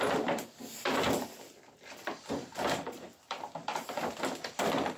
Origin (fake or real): fake